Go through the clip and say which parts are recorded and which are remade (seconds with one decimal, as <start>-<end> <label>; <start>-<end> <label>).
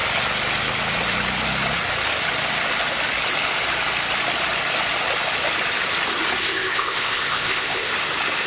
0.0-6.4 recorded; 6.4-7.9 remade; 7.9-8.5 recorded